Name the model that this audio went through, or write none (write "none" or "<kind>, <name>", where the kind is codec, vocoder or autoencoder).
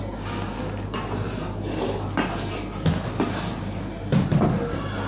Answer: none